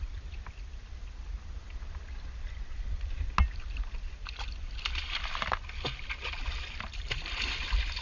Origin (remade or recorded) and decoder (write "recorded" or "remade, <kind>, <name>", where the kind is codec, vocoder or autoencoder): recorded